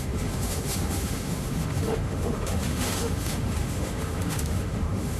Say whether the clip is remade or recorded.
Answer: remade